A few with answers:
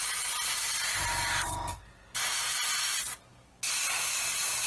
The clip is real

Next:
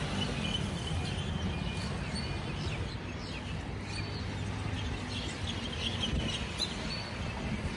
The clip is real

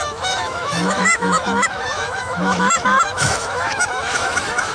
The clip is fake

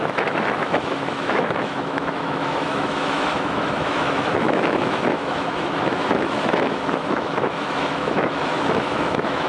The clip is fake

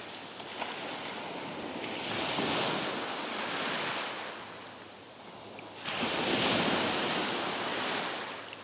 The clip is real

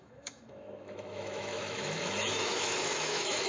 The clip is fake